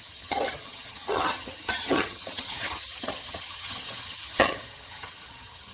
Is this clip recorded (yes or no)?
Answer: no